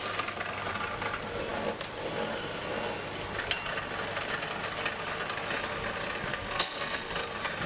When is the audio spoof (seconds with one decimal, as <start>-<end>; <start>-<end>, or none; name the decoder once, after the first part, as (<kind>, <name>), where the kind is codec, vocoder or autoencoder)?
6.3-7.1 (codec, SNAC)